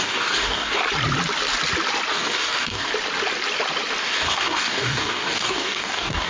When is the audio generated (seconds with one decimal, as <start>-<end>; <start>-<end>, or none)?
0.0-0.8; 2.1-2.9; 4.0-6.3